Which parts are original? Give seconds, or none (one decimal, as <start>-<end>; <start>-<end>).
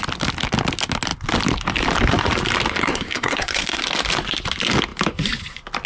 0.0-2.8; 3.8-5.9